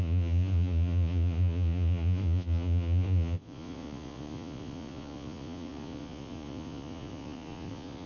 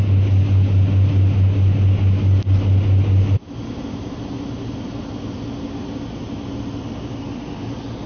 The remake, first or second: first